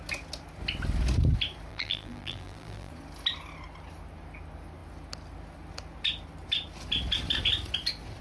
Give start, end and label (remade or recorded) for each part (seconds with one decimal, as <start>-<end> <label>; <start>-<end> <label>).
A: 0.0-1.7 recorded; 1.7-2.9 remade; 2.9-8.2 recorded